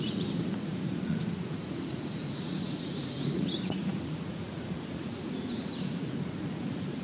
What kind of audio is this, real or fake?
fake